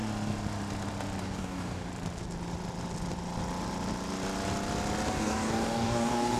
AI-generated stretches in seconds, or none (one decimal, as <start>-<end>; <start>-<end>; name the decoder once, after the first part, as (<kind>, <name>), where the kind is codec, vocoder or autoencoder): 1.2-1.9 (codec, DAC); 5.1-6.4